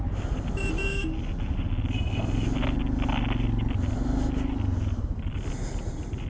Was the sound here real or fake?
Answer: real